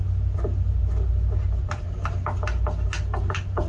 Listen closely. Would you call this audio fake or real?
real